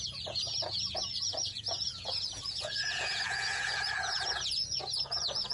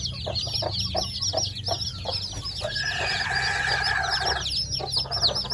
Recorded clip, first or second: second